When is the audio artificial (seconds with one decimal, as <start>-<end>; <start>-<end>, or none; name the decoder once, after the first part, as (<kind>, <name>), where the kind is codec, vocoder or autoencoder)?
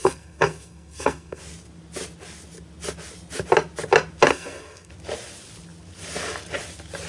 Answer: 0.0-1.4 (codec, SNAC); 4.3-4.9